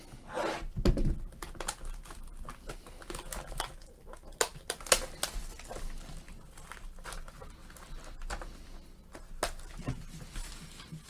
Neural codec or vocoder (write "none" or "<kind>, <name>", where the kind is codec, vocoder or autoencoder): none